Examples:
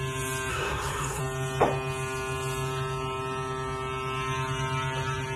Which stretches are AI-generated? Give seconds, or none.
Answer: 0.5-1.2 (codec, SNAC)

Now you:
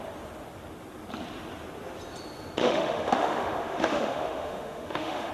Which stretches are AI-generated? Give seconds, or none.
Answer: 2.6-5.3 (autoencoder, DAC-VAE)

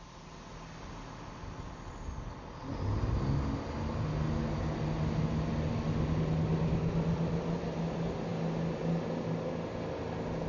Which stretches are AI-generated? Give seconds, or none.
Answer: none

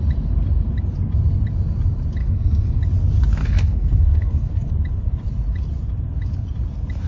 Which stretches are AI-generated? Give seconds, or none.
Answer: 2.2-2.8 (codec, SNAC); 3.4-4.7

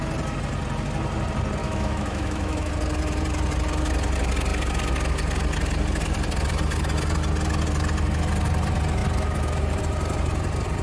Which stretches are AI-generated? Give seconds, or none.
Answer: 1.6-2.7 (autoencoder, DAC-VAE)

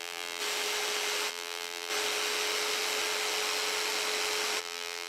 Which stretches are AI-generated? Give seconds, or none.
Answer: 0.0-0.4 (vocoder, BigVGAN v2); 1.3-1.9; 4.6-5.1